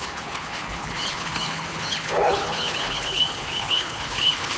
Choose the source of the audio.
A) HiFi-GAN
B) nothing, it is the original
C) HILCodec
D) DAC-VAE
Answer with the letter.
C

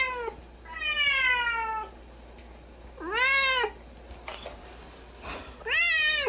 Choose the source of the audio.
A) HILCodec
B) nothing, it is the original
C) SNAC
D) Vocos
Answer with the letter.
B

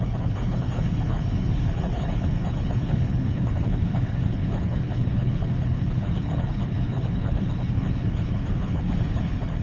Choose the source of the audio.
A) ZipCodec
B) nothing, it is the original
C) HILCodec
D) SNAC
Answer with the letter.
C